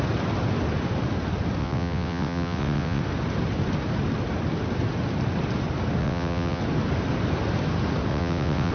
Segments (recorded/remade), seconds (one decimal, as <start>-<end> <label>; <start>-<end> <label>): 0.0-1.6 recorded; 1.6-3.0 remade; 3.0-6.0 recorded; 6.0-6.6 remade; 6.6-8.1 recorded; 8.1-8.7 remade